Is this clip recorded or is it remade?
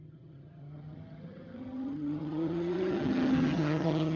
remade